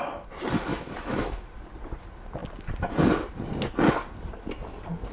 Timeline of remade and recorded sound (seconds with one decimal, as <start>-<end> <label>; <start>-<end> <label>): 0.0-0.7 recorded; 0.7-1.5 remade; 1.5-5.1 recorded